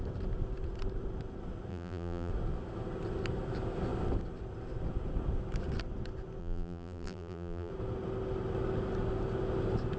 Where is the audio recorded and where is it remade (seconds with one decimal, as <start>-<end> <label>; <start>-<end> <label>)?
0.0-1.7 recorded; 1.7-2.3 remade; 2.3-6.4 recorded; 6.4-7.7 remade; 7.7-10.0 recorded

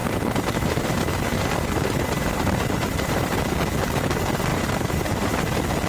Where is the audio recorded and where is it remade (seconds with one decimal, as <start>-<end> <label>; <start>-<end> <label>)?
0.0-3.5 remade; 3.5-4.5 recorded; 4.5-5.3 remade; 5.3-5.9 recorded

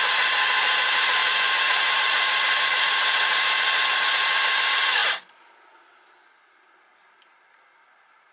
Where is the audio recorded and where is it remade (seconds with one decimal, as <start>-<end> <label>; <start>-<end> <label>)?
0.0-8.3 recorded

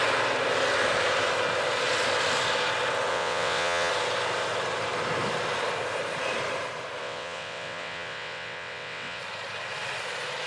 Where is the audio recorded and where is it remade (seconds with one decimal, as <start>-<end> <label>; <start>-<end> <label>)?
0.0-3.1 recorded; 3.1-3.9 remade; 3.9-7.0 recorded; 7.0-9.2 remade; 9.2-10.5 recorded